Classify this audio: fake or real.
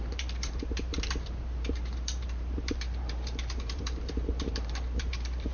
fake